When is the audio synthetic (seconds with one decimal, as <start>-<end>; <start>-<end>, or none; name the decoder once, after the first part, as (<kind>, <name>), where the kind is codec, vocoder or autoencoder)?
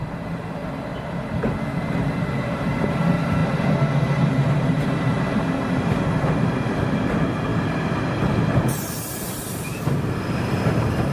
0.0-0.9 (vocoder, BigVGAN v2); 1.6-3.4; 4.5-11.1